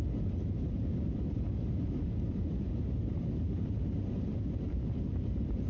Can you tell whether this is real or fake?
fake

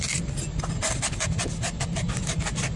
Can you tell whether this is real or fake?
real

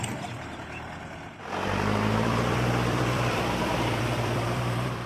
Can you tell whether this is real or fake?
fake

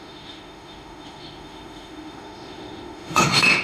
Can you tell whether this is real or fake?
fake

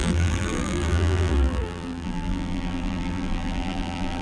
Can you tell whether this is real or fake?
fake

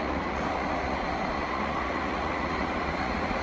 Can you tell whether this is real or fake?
fake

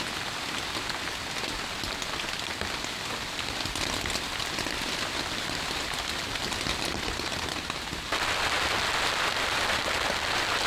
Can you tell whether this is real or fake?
real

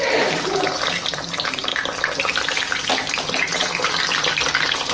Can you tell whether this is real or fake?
real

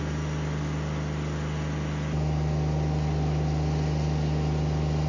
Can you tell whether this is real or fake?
real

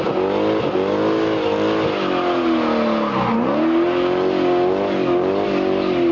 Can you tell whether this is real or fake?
real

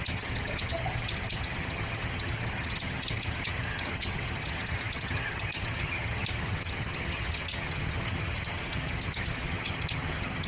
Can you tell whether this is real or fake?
fake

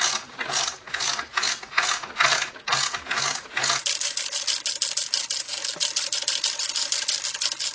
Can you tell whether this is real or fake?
real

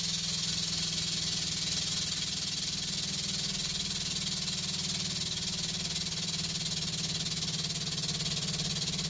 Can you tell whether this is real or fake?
real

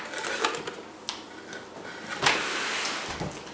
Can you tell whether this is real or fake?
real